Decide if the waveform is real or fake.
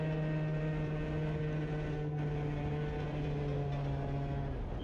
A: real